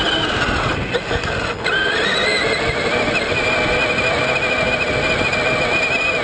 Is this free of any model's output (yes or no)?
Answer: yes